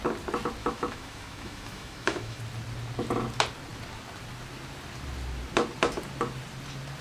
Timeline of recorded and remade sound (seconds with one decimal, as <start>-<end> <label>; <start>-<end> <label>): 0.0-0.6 recorded; 0.6-2.4 remade; 2.4-7.0 recorded